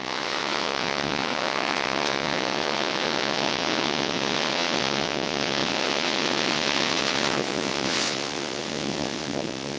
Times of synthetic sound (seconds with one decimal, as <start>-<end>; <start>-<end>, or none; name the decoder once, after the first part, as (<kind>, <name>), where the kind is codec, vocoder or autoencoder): 0.0-9.8 (vocoder, WaveNeXt)